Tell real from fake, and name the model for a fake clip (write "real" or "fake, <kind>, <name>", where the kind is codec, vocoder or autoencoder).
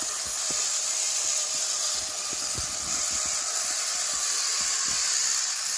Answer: real